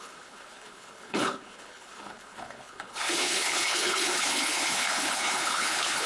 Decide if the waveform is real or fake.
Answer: fake